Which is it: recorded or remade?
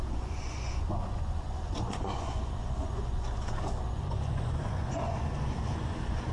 remade